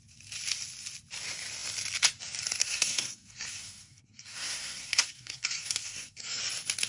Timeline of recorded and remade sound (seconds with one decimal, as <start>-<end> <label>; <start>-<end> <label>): 0.0-2.6 recorded; 2.6-6.4 remade; 6.4-6.9 recorded